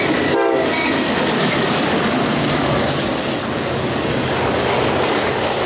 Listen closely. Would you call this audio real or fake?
fake